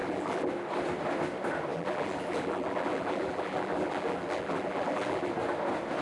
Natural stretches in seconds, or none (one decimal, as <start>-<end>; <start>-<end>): 0.5-1.7; 5.3-6.0